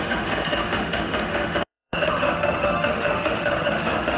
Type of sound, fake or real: fake